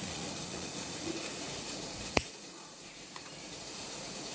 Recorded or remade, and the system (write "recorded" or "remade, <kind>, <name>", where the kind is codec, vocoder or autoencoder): remade, vocoder, Vocos